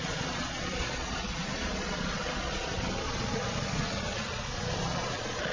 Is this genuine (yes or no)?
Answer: no